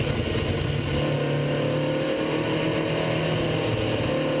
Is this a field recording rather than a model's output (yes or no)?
yes